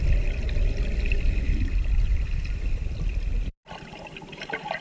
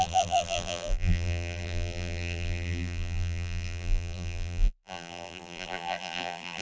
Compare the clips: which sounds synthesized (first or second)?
second